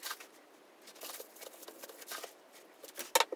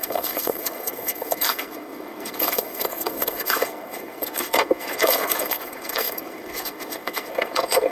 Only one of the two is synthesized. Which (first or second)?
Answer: second